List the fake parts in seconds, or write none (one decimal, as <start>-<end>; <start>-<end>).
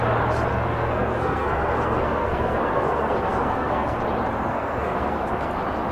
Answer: 0.5-4.0; 4.5-5.5